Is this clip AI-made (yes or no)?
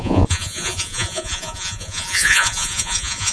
yes